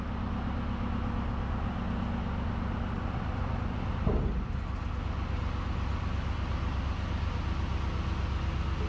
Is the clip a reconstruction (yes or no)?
no